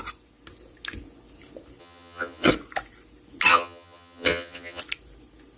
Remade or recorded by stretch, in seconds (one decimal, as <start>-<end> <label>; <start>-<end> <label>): 0.0-1.8 recorded; 1.8-2.5 remade; 2.5-3.5 recorded; 3.5-4.8 remade; 4.8-5.6 recorded